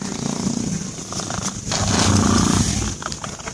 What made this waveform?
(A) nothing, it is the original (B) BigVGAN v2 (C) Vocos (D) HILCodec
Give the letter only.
A